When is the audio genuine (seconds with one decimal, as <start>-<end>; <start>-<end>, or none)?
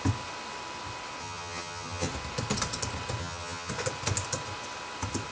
0.0-1.2; 2.1-3.2; 3.7-5.3